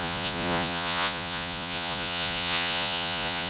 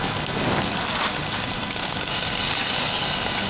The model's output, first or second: first